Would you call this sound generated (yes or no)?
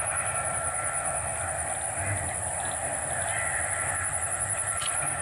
no